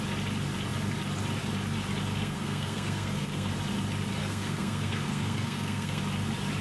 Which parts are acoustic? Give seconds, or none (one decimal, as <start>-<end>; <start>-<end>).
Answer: 0.0-2.2; 3.5-4.2; 6.0-6.6

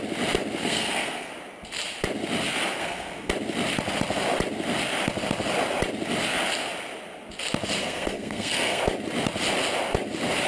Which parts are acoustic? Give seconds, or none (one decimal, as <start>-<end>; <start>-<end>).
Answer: 0.0-0.6; 1.3-2.8; 3.3-7.8; 8.8-10.5

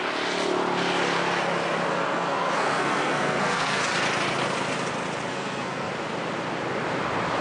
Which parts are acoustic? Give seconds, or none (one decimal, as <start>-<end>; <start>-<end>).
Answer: 0.0-1.9; 3.8-5.3; 5.9-7.4

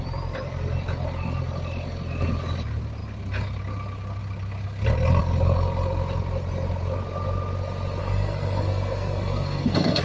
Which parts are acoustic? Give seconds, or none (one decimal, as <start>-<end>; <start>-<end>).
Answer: 0.0-8.0

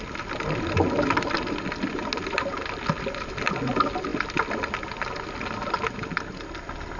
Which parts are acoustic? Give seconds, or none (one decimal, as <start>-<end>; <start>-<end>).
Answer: 0.0-7.0